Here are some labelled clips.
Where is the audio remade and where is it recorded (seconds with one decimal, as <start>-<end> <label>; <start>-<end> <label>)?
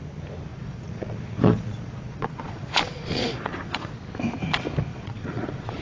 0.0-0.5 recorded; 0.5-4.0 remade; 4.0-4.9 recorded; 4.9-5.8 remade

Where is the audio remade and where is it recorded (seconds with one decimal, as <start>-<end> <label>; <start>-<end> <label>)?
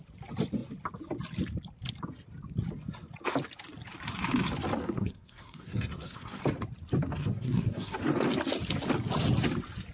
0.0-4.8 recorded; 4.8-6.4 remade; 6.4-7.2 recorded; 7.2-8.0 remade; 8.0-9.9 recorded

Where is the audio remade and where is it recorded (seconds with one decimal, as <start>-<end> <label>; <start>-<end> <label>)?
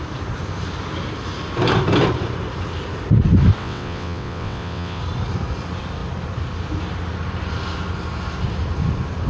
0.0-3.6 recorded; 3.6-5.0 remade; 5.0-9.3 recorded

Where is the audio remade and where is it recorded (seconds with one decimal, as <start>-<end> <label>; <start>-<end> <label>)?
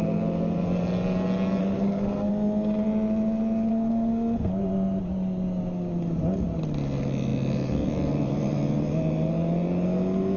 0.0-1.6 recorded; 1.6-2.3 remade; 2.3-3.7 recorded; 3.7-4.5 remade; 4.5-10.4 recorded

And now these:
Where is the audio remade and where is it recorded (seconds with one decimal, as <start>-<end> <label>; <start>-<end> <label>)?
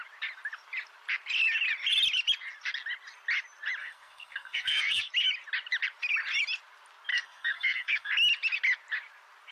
0.0-3.8 recorded; 3.8-5.1 remade; 5.1-7.1 recorded; 7.1-8.1 remade; 8.1-9.5 recorded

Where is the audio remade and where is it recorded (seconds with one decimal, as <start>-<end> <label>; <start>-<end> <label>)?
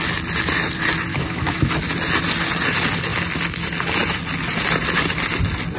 0.0-1.1 recorded; 1.1-1.7 remade; 1.7-5.8 recorded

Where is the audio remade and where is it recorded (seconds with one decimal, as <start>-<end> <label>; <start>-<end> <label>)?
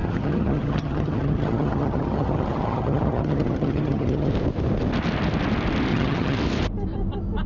0.0-4.3 remade; 4.3-5.9 recorded; 5.9-6.4 remade; 6.4-7.5 recorded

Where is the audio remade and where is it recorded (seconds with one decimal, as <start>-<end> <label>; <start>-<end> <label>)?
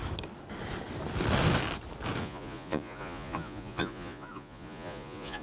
0.0-2.2 recorded; 2.2-5.4 remade